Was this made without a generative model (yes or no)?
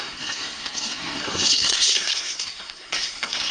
no